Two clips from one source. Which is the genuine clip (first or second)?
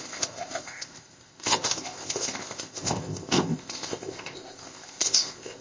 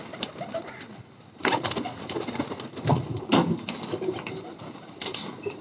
second